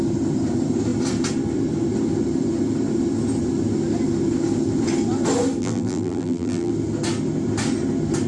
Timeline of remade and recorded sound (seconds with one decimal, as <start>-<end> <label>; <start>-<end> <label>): 0.0-5.6 recorded; 5.6-6.7 remade; 6.7-8.3 recorded